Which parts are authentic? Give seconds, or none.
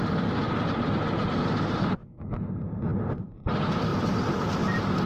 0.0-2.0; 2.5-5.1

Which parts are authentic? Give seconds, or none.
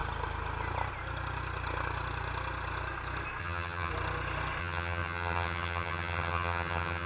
0.0-3.4; 3.9-4.6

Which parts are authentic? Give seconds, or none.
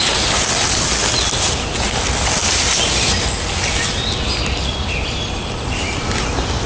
0.0-6.7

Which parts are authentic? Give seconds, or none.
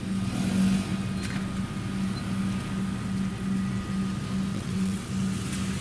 0.0-4.5; 5.1-5.8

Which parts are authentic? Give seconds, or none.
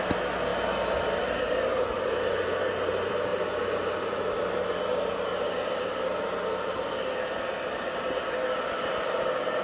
0.0-9.6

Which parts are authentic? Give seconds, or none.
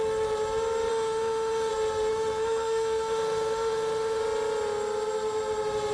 0.0-0.9; 1.7-2.1; 4.2-5.9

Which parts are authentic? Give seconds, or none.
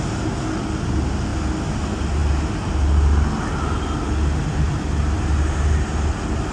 0.0-6.5